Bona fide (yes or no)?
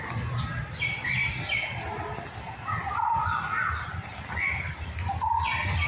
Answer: yes